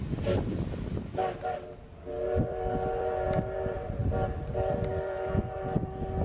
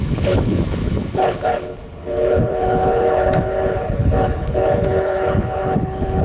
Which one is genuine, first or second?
first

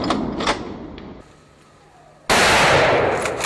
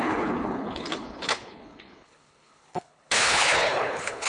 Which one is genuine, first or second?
first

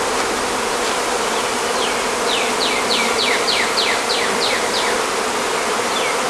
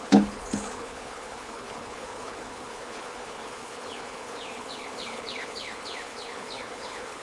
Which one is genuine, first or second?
first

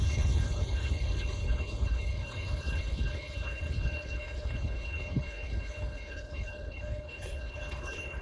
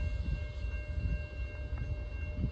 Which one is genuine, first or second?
second